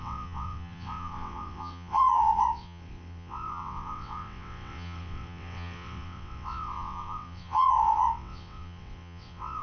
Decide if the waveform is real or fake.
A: fake